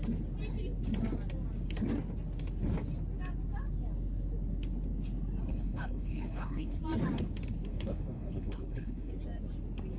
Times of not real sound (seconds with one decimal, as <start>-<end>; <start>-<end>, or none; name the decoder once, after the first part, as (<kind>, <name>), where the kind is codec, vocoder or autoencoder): 5.5-6.8 (codec, HILCodec); 7.7-9.1